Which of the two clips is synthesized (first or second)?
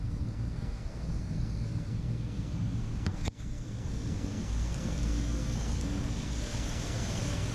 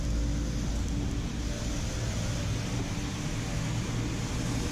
first